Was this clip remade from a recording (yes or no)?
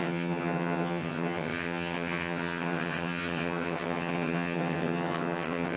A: yes